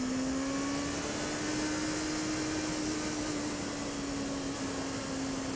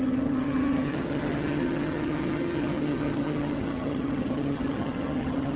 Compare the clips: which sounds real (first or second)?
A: first